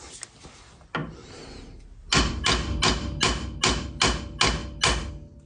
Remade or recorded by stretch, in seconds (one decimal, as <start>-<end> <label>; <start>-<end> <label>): 0.0-5.5 recorded